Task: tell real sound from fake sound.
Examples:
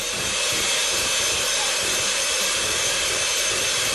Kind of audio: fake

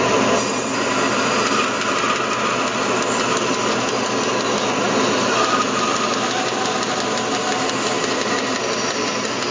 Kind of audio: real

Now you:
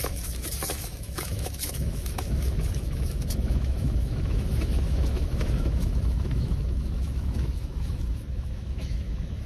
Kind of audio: fake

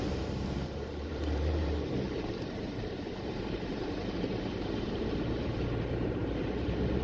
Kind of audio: fake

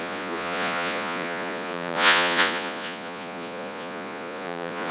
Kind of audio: fake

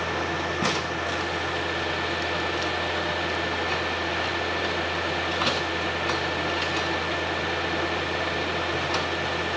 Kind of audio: real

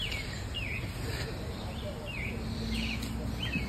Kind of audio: real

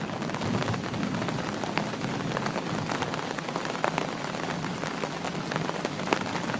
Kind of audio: real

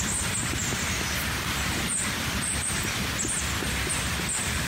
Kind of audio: real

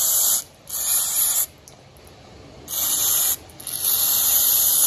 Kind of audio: real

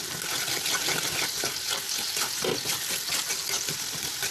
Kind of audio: real